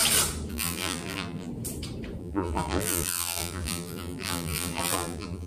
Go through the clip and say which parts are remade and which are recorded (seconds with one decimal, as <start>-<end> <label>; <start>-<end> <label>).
0.0-0.5 recorded; 0.5-1.5 remade; 1.5-2.2 recorded; 2.2-5.5 remade